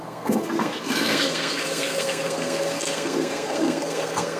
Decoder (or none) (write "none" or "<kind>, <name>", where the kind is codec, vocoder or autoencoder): codec, SNAC